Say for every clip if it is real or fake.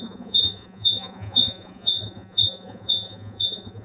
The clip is fake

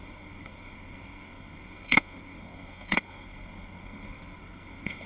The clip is fake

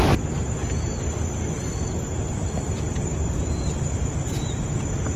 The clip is real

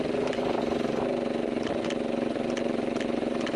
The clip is real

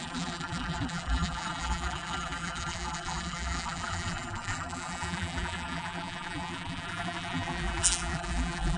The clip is fake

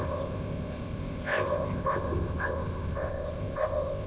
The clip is fake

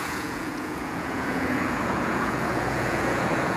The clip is fake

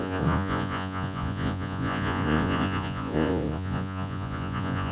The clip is fake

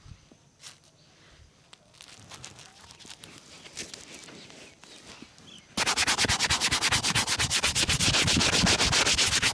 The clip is real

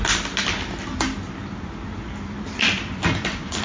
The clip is real